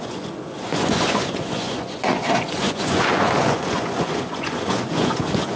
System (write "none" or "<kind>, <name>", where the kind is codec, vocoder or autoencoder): vocoder, Vocos